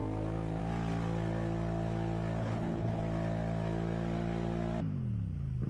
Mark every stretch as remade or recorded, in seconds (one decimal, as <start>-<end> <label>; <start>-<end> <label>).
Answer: 0.0-2.4 recorded; 2.4-3.0 remade; 3.0-5.7 recorded